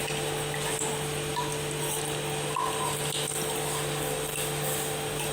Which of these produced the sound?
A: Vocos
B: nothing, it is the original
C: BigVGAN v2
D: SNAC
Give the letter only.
B